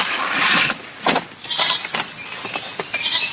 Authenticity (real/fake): real